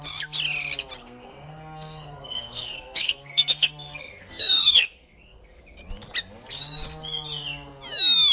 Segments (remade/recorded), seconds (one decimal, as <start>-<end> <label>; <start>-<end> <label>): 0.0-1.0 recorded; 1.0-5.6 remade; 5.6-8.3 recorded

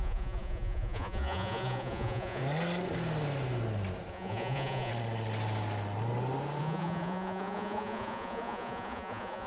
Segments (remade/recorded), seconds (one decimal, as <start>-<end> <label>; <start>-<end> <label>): 0.0-2.4 remade; 2.4-4.1 recorded; 4.1-4.9 remade; 4.9-6.6 recorded; 6.6-9.5 remade

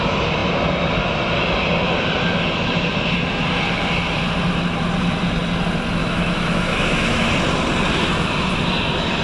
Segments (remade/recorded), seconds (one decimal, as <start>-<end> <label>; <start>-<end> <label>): 0.0-6.0 recorded; 6.0-7.3 remade; 7.3-9.2 recorded